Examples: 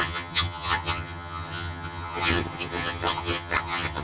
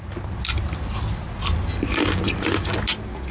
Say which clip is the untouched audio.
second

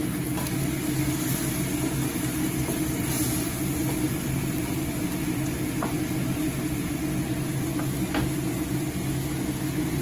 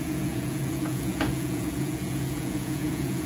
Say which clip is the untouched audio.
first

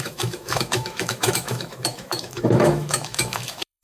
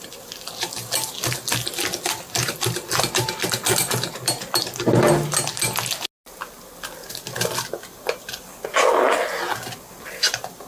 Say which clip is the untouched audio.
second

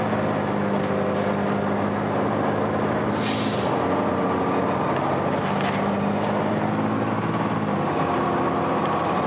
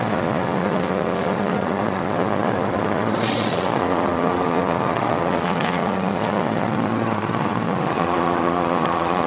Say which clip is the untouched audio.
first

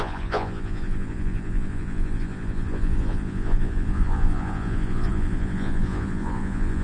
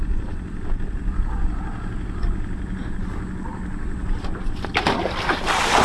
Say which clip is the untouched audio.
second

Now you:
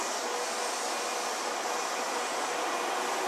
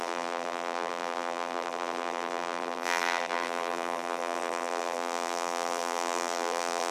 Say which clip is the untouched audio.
first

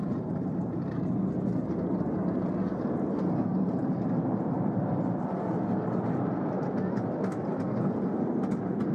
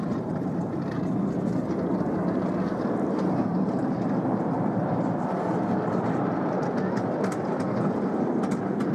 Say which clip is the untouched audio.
first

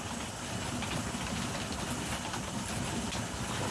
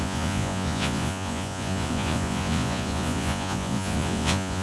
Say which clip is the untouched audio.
first